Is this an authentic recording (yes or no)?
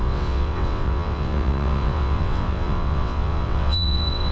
no